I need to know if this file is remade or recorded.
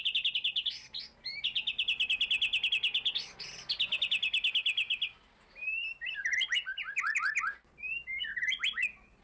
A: recorded